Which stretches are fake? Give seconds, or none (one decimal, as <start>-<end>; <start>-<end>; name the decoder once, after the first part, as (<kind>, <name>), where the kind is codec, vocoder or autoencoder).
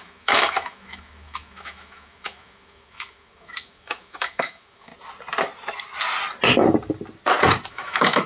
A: 0.0-4.9 (autoencoder, DAC-VAE); 7.7-8.3